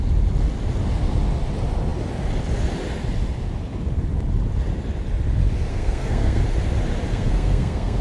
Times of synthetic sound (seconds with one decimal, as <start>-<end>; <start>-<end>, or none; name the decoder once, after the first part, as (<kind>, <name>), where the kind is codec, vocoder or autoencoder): 5.7-6.4 (codec, SNAC); 7.1-8.0